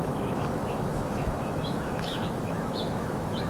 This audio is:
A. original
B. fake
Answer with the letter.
B